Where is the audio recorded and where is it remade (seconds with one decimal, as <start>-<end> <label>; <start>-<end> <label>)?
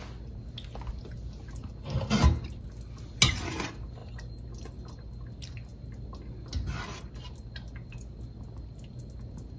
0.0-9.6 recorded